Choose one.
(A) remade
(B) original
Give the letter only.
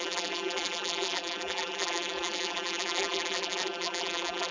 A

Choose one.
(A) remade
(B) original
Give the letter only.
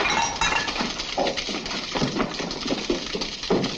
B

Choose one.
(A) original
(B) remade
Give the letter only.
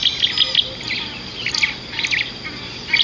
A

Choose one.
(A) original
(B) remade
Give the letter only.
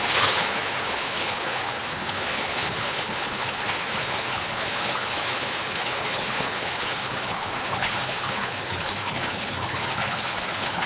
B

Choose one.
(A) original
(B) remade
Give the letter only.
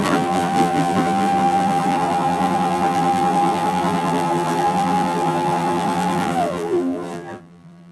B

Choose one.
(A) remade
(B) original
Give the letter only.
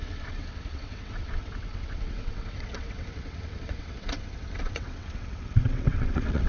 A